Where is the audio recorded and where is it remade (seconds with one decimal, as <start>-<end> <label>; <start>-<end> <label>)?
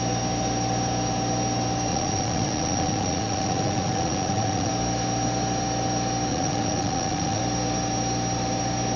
0.0-1.9 recorded; 1.9-4.7 remade; 4.7-6.3 recorded; 6.3-7.4 remade; 7.4-9.0 recorded